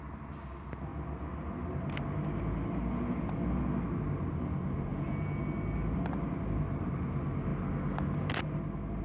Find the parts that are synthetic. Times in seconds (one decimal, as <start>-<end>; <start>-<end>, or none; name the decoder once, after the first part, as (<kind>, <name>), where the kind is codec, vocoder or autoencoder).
4.9-5.4 (vocoder, Vocos)